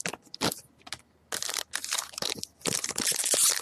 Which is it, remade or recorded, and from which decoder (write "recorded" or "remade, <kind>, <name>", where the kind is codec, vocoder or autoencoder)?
recorded